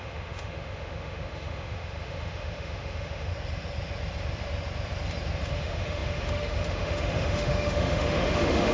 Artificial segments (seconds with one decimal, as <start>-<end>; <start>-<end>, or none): 0.0-3.3; 5.5-8.7